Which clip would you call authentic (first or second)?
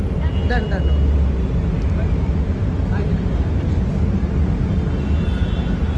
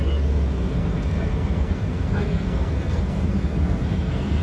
first